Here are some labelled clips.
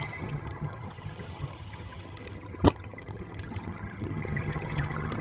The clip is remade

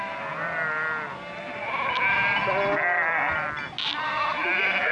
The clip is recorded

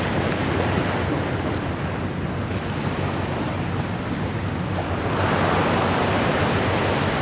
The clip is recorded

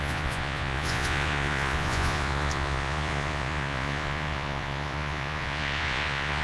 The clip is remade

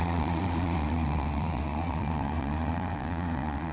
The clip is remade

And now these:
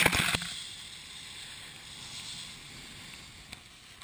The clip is recorded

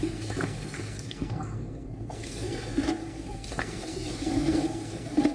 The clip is remade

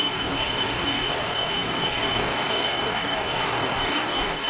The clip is remade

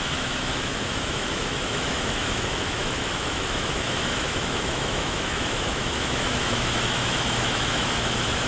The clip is remade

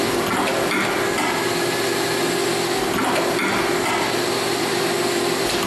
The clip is recorded